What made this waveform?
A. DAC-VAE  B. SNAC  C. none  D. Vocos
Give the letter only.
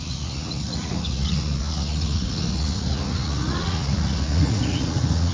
D